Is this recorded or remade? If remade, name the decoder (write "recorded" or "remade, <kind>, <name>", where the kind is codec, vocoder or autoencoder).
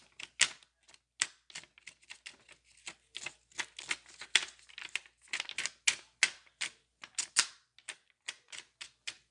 recorded